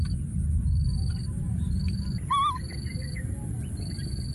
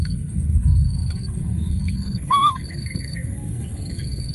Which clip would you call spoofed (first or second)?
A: second